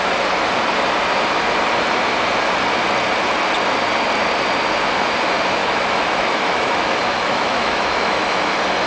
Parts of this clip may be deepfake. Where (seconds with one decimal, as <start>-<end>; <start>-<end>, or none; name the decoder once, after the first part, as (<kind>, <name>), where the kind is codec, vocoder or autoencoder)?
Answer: 5.6-8.5 (autoencoder, DAC-VAE)

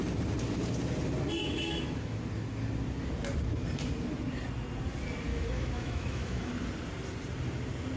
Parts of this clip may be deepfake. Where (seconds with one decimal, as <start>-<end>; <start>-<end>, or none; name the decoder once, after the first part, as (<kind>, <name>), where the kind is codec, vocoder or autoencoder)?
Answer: 1.4-2.2 (autoencoder, DAC-VAE); 5.3-6.5